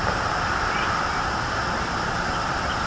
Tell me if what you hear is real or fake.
real